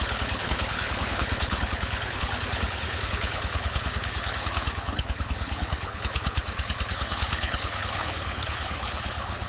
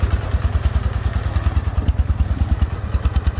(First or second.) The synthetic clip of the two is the first